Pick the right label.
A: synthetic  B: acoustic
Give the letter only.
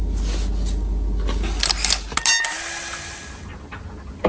B